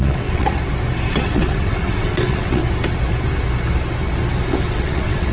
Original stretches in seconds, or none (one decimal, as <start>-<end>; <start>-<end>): 0.6-1.1; 2.6-4.6